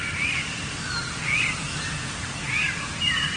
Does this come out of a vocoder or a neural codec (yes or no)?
no